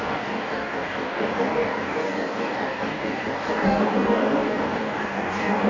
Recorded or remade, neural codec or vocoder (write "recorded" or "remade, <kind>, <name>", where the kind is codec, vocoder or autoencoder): remade, codec, DAC